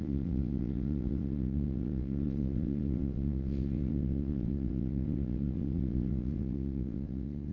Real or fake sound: fake